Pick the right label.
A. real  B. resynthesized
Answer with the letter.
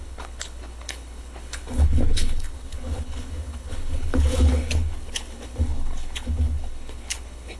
B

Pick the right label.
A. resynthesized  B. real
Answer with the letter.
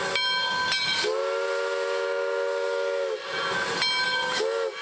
B